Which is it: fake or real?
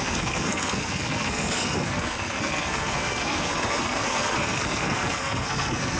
fake